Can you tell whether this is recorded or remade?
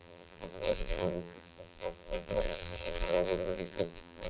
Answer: remade